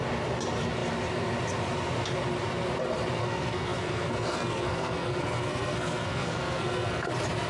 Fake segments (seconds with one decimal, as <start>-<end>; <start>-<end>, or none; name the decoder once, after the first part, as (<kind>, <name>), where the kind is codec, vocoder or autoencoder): 3.2-7.1 (codec, SNAC)